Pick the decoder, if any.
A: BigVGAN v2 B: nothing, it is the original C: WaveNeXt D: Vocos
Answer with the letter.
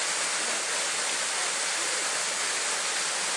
B